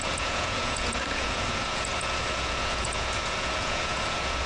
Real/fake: fake